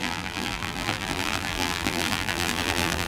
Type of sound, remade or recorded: remade